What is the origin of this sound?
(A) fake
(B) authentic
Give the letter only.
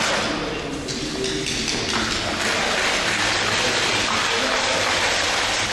B